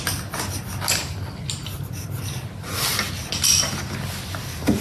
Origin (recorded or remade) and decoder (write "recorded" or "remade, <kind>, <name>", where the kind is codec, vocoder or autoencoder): recorded